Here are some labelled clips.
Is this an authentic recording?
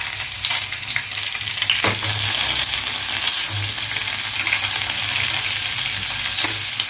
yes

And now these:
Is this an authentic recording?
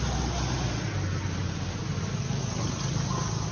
yes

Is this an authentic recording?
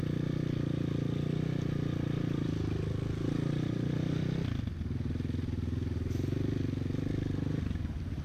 yes